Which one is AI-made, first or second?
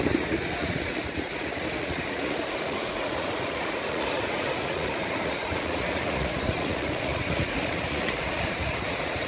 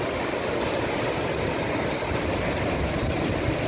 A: first